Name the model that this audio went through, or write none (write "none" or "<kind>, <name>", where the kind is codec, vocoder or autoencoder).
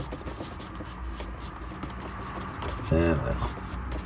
none